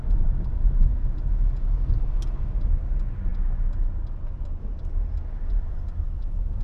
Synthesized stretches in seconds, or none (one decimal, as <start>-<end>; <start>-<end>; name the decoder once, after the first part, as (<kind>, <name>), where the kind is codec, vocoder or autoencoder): 0.9-1.9 (vocoder, Vocos)